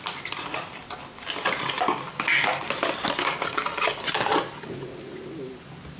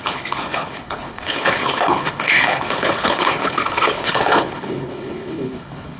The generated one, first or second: second